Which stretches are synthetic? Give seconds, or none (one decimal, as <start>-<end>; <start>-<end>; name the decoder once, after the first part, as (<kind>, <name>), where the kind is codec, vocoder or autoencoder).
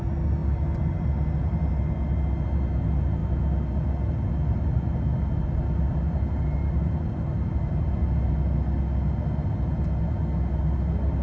6.6-7.9 (vocoder, BigVGAN v2)